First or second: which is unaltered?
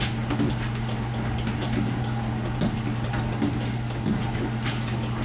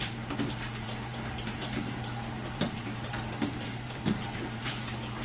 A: first